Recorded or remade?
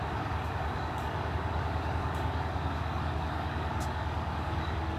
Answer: remade